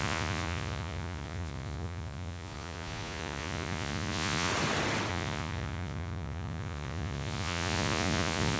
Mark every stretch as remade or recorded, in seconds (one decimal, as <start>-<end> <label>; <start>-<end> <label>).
0.0-4.5 remade; 4.5-5.1 recorded; 5.1-8.6 remade